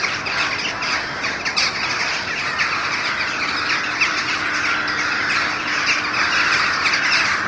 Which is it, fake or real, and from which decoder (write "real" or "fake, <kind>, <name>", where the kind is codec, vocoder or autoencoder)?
real